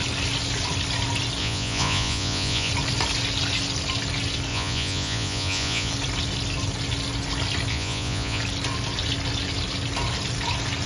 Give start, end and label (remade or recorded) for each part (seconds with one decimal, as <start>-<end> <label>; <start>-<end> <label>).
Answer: 0.0-1.4 recorded; 1.4-2.7 remade; 2.7-4.5 recorded; 4.5-5.9 remade; 5.9-7.7 recorded; 7.7-8.4 remade; 8.4-10.9 recorded